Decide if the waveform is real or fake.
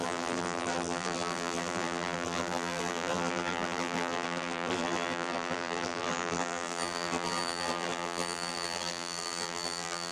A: fake